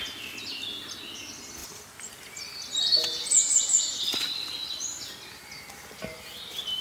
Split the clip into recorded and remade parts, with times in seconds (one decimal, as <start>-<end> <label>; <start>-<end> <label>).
0.0-1.6 recorded; 1.6-2.1 remade; 2.1-6.8 recorded